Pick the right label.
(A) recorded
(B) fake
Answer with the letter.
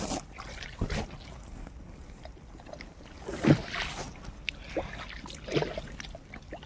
A